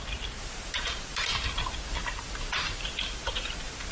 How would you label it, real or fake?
fake